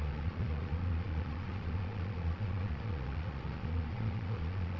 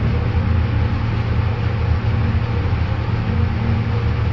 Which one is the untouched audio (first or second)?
second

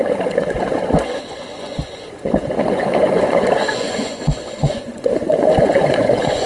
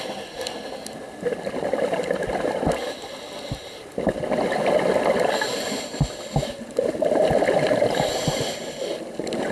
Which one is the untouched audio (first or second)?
second